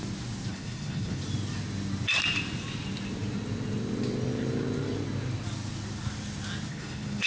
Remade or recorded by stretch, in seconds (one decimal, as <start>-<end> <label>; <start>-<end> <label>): 0.0-0.5 recorded; 0.5-1.2 remade; 1.2-6.7 recorded; 6.7-7.3 remade

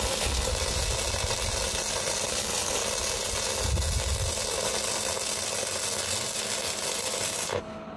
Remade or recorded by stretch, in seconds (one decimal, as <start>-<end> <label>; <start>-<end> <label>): 0.0-0.5 remade; 0.5-2.3 recorded; 2.3-2.8 remade; 2.8-7.6 recorded; 7.6-8.0 remade

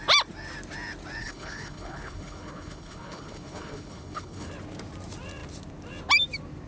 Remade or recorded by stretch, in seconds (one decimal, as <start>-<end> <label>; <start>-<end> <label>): 0.0-1.2 recorded; 1.2-4.5 remade; 4.5-6.7 recorded

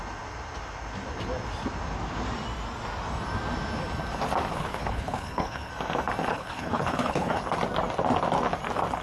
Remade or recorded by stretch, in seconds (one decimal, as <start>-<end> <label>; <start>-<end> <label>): 0.0-4.5 recorded; 4.5-5.7 remade; 5.7-6.3 recorded; 6.3-7.4 remade; 7.4-9.0 recorded

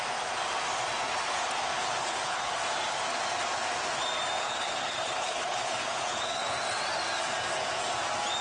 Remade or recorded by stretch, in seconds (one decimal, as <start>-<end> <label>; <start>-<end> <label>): 0.0-2.0 recorded; 2.0-2.5 remade; 2.5-4.4 recorded; 4.4-6.4 remade; 6.4-8.4 recorded

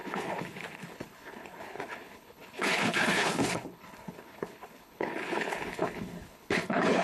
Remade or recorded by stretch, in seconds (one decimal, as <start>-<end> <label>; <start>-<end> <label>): 0.0-7.0 remade

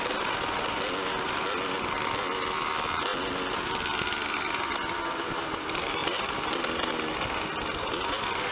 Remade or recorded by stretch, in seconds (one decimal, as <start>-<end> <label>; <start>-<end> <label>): 0.0-8.5 recorded